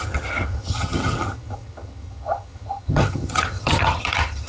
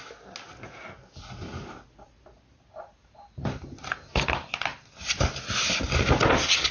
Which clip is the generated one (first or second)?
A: first